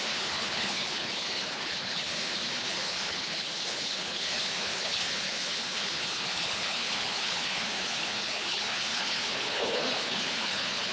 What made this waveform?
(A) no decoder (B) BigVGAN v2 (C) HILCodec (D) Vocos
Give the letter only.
C